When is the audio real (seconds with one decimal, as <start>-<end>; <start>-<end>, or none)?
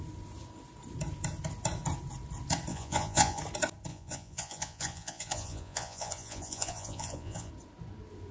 0.0-2.7; 3.4-3.9; 7.5-8.3